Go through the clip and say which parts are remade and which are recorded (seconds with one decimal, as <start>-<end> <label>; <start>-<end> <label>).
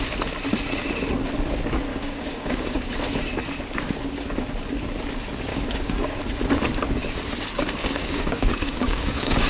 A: 0.0-1.9 recorded; 1.9-2.9 remade; 2.9-5.5 recorded; 5.5-6.2 remade; 6.2-8.0 recorded; 8.0-9.5 remade